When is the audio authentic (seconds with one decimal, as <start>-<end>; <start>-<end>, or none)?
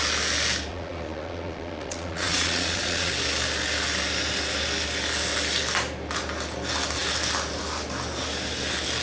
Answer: 0.0-0.7; 3.1-9.0